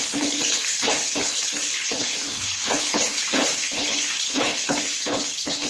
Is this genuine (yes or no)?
no